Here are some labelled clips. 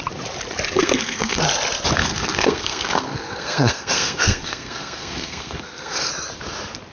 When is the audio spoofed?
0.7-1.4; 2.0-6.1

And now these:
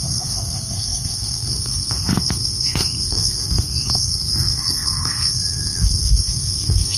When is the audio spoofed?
0.0-7.0

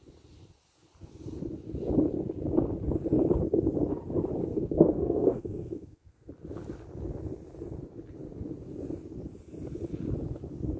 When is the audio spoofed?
4.4-6.3

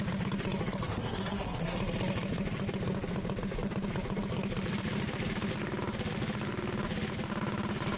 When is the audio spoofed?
0.9-1.8